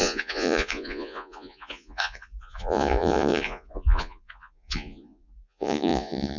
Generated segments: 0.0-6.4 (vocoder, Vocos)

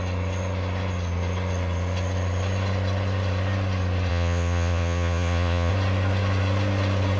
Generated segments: 4.1-5.7 (vocoder, Vocos)